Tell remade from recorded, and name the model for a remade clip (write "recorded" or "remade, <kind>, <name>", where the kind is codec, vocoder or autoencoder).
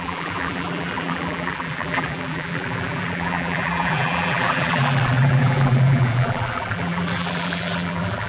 remade, vocoder, BigVGAN v2